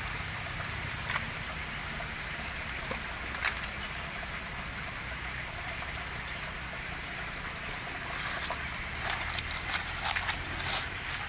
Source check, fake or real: real